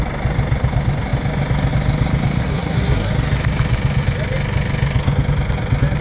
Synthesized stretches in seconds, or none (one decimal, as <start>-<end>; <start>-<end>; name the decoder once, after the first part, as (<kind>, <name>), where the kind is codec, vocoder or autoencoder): 2.4-3.1 (codec, SNAC)